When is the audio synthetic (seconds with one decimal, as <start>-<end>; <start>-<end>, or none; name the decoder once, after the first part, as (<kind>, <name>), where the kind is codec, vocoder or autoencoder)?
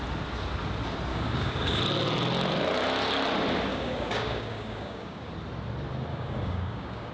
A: 1.1-1.8 (codec, DAC); 3.7-5.3; 6.1-7.1